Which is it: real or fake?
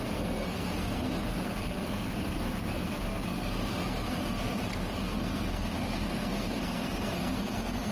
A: fake